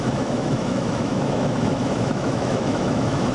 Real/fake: fake